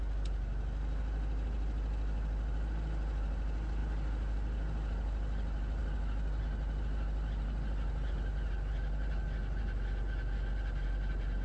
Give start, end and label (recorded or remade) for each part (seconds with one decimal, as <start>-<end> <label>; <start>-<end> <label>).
0.0-11.4 recorded